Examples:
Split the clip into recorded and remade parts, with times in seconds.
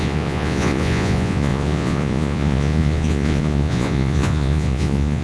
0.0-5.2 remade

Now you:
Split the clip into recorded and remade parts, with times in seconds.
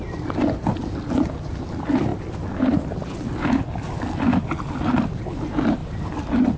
0.0-6.6 recorded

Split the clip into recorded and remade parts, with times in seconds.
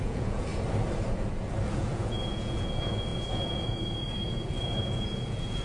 0.0-0.5 remade; 0.5-1.8 recorded; 1.8-5.6 remade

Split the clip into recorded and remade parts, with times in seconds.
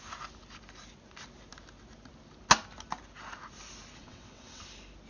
0.0-4.0 recorded; 4.0-4.6 remade; 4.6-5.1 recorded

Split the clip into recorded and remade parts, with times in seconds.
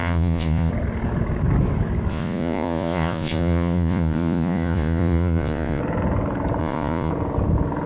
0.0-0.7 remade; 0.7-2.1 recorded; 2.1-5.8 remade; 5.8-6.6 recorded; 6.6-7.1 remade; 7.1-7.9 recorded